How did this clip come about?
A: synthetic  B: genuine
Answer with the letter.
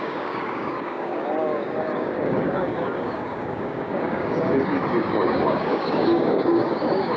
A